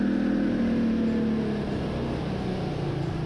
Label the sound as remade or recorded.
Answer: recorded